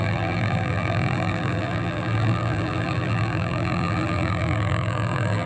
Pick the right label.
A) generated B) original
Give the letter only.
A